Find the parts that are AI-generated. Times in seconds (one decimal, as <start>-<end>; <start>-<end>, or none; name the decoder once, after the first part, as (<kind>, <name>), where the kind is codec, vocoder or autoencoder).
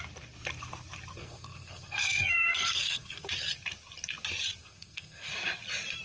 1.2-3.3 (codec, SNAC); 4.6-5.3